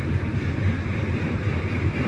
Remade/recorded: recorded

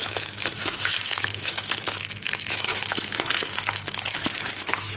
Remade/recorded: remade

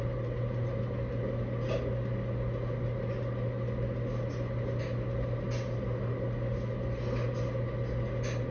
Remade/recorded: recorded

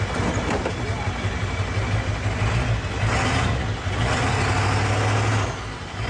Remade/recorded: recorded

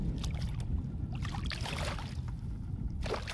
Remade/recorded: recorded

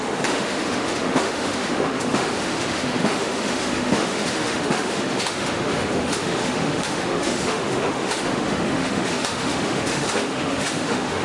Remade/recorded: remade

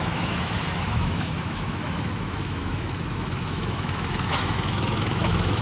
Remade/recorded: remade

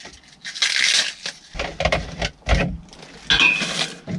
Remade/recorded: recorded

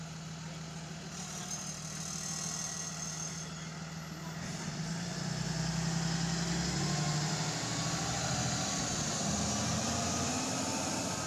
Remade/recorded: recorded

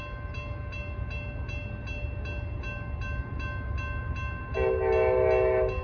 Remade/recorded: recorded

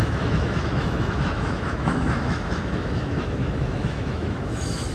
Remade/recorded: remade